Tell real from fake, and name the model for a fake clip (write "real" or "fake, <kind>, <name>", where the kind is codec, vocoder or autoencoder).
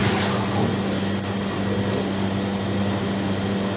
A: real